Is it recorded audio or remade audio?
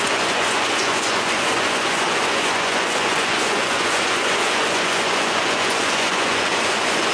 remade